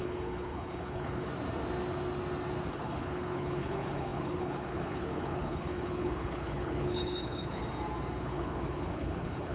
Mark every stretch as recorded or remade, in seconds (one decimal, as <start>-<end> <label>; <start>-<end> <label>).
0.0-1.3 remade; 1.3-2.7 recorded; 2.7-7.6 remade; 7.6-8.2 recorded; 8.2-9.5 remade